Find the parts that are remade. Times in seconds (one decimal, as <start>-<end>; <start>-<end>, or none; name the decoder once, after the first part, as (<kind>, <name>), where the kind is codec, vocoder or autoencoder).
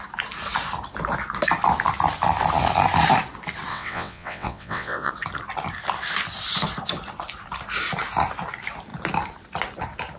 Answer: 3.7-5.1 (vocoder, WaveNeXt)